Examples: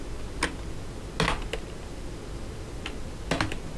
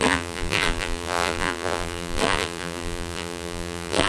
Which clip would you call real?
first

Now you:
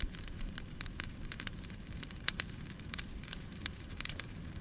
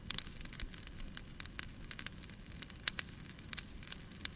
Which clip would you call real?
second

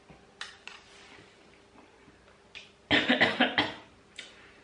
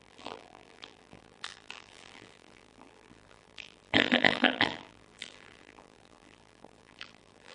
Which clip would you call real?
first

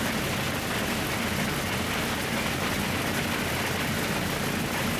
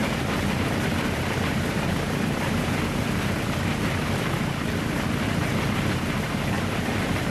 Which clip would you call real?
first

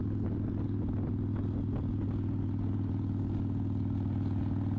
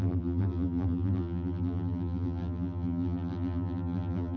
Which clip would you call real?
first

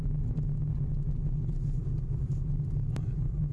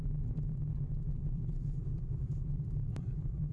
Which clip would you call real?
first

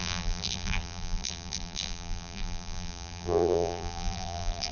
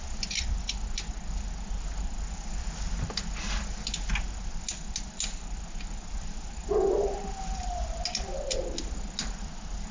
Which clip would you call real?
second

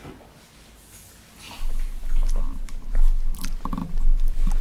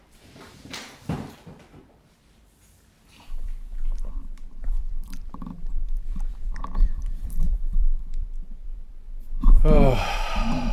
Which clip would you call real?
first